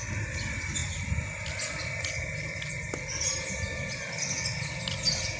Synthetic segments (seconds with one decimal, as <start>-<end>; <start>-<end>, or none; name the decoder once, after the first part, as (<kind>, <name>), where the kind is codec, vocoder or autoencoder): none